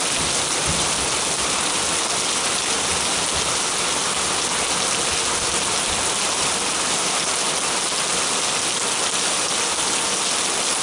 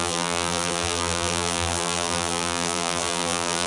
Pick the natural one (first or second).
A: first